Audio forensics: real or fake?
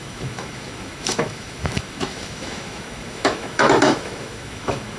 fake